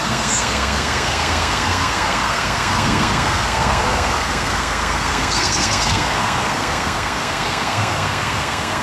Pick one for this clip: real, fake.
fake